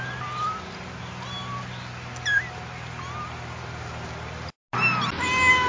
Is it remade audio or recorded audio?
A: recorded